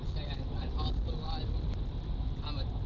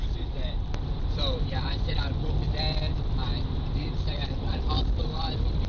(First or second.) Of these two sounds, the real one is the first